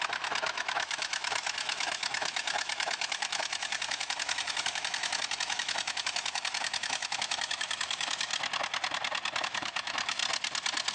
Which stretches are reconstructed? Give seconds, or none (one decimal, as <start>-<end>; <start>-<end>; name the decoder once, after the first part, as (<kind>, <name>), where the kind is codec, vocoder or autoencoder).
0.0-8.3 (autoencoder, DAC-VAE); 9.4-10.2